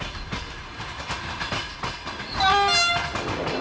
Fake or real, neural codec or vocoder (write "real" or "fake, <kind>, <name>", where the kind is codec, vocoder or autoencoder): real